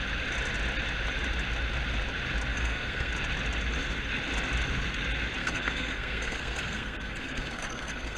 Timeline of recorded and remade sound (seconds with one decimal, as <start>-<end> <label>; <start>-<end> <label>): 0.0-2.5 recorded; 2.5-3.1 remade; 3.1-5.4 recorded; 5.4-8.2 remade